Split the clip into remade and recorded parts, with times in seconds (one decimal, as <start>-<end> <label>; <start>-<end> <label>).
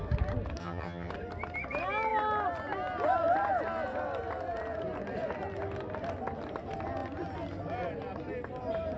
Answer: 0.0-0.6 recorded; 0.6-1.1 remade; 1.1-9.0 recorded